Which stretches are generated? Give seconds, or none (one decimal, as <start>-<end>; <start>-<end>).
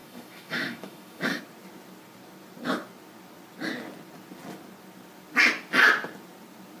0.0-1.4